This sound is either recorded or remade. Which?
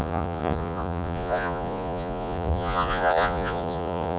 remade